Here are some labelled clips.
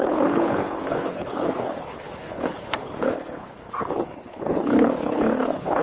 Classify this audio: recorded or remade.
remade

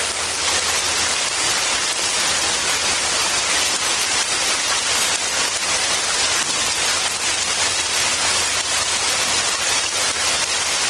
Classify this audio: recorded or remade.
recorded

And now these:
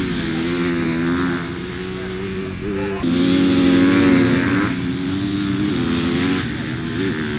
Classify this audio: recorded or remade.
recorded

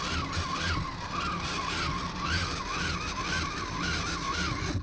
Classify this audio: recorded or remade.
recorded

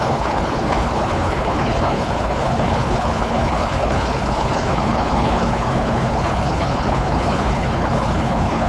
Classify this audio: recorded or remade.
remade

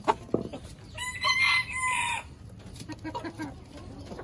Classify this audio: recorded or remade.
recorded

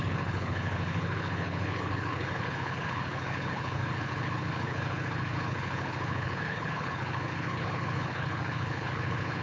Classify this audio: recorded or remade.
remade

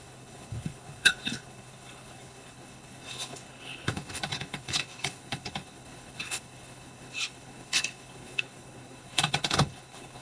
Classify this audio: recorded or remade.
remade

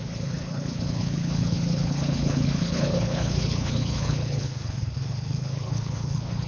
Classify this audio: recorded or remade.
remade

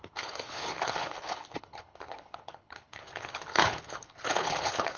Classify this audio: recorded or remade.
remade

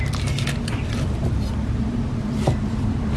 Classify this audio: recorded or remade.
recorded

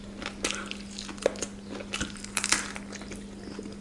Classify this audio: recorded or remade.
recorded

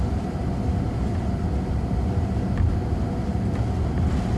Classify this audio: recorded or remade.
recorded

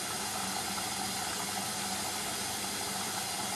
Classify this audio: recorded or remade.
recorded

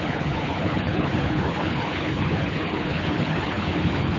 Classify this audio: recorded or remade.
remade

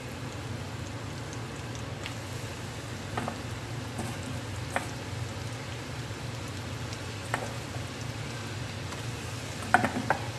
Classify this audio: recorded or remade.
recorded